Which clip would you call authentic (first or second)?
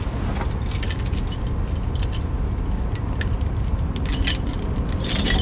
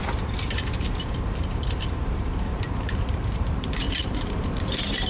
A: first